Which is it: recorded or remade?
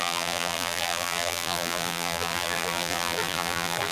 remade